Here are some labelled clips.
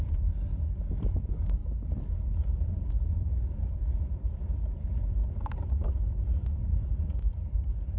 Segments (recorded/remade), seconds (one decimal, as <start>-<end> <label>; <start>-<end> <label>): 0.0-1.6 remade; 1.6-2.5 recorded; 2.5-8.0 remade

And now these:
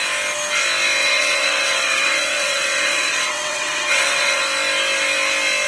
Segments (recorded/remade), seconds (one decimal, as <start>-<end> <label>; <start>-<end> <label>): 0.0-1.0 recorded; 1.0-4.4 remade; 4.4-5.7 recorded

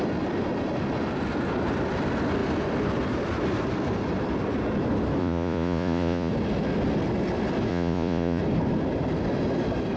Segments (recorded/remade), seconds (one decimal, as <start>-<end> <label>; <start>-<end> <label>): 0.0-5.2 recorded; 5.2-6.3 remade; 6.3-7.7 recorded; 7.7-8.4 remade; 8.4-10.0 recorded

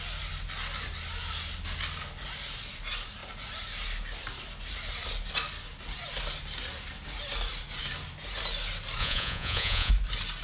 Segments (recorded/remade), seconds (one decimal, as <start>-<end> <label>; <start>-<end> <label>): 0.0-9.0 recorded; 9.0-9.9 remade; 9.9-10.4 recorded

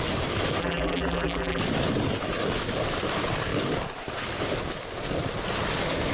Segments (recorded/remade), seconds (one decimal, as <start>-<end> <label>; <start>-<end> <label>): 0.0-0.6 recorded; 0.6-1.6 remade; 1.6-6.1 recorded